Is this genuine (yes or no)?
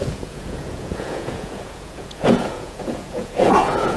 no